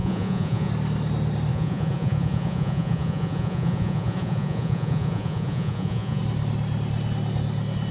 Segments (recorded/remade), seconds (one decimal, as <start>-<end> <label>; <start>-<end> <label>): 0.0-0.7 remade; 0.7-1.5 recorded; 1.5-6.2 remade; 6.2-7.9 recorded